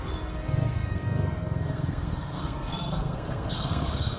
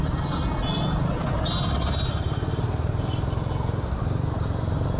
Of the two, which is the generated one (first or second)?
first